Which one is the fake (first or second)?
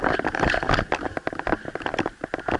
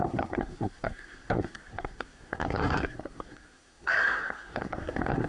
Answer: second